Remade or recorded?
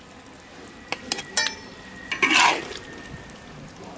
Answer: recorded